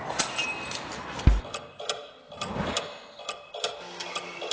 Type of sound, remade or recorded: recorded